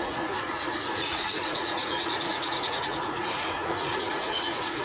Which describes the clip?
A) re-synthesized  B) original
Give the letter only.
A